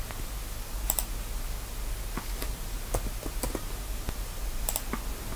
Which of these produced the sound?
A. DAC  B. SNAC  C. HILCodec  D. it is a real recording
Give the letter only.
D